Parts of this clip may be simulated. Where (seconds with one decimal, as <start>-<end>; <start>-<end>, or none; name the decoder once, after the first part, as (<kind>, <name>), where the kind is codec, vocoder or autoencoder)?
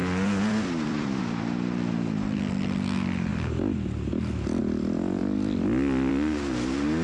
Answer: 0.0-1.2 (vocoder, BigVGAN v2)